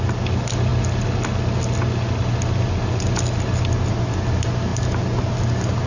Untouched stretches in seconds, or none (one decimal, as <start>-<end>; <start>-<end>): 0.0-4.7; 5.3-5.9